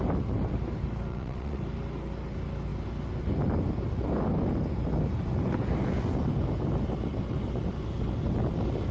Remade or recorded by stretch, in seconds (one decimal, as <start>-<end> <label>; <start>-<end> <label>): 0.0-1.1 recorded; 1.1-1.6 remade; 1.6-8.9 recorded